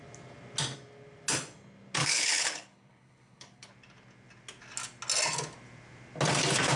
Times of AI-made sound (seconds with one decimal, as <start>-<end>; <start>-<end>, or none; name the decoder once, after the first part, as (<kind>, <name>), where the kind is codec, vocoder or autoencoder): 2.0-3.7 (codec, HILCodec)